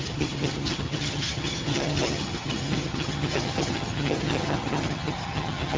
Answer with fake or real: fake